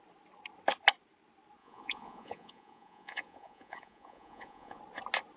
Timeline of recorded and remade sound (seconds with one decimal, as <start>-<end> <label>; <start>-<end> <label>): 0.0-1.6 recorded; 1.6-4.8 remade; 4.8-5.4 recorded